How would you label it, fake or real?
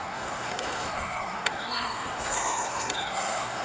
fake